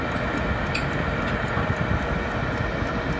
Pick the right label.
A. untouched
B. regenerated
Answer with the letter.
A